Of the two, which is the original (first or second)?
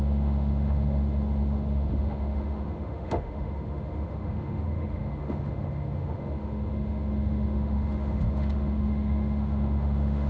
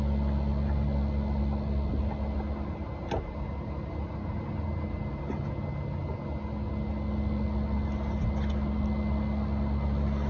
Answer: second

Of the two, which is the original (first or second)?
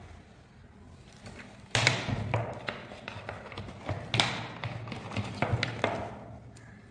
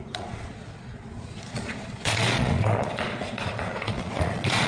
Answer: first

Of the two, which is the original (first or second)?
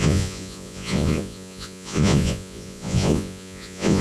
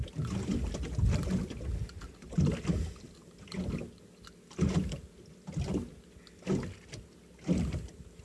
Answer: second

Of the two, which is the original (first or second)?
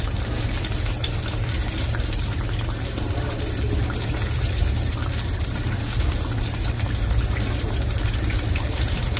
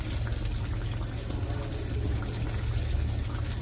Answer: second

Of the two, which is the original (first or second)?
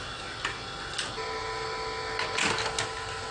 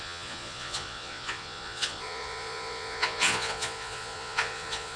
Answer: first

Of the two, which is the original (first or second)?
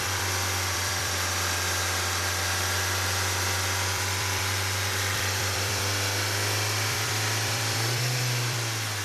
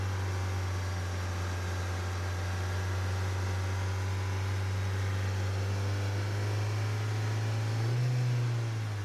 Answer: second